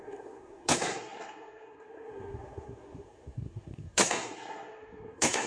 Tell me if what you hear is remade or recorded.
remade